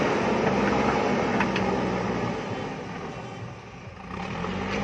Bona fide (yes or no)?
yes